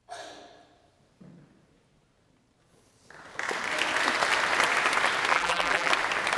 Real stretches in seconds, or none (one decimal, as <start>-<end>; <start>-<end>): 0.0-5.3; 5.9-6.4

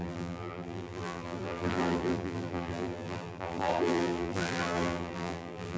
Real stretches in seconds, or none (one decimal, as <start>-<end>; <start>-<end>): none